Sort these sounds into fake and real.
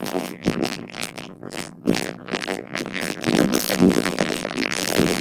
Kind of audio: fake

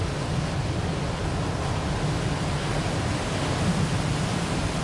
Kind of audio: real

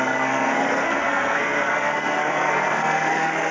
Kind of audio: fake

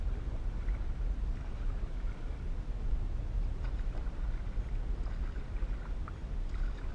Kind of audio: real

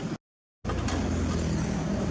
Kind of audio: real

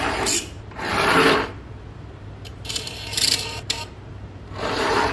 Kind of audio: fake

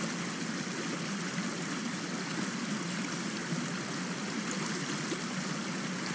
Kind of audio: real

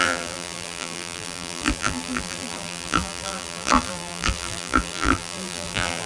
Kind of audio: fake